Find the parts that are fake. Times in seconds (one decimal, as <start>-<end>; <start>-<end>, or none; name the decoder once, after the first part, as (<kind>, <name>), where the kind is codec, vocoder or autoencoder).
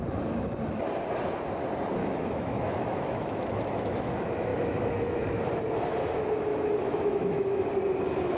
2.0-4.1 (autoencoder, DAC-VAE); 4.5-5.4; 6.5-7.7